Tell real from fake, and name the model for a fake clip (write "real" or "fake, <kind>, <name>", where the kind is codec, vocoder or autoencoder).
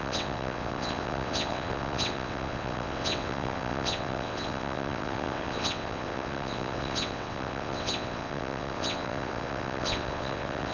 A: fake, vocoder, WaveNeXt